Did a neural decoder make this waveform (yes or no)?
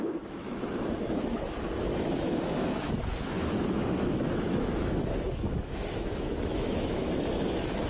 yes